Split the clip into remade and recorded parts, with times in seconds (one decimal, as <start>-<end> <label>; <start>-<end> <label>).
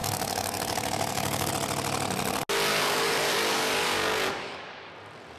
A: 0.0-1.5 remade; 1.5-2.7 recorded; 2.7-4.9 remade; 4.9-5.4 recorded